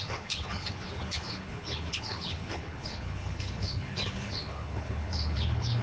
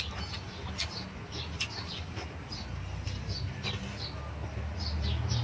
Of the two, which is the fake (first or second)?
first